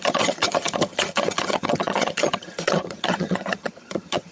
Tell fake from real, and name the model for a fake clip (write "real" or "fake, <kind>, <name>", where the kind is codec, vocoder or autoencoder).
fake, vocoder, HiFi-GAN